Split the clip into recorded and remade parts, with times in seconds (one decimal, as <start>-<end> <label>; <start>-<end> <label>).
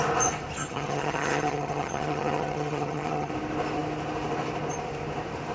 0.0-0.6 recorded; 0.6-3.3 remade; 3.3-5.5 recorded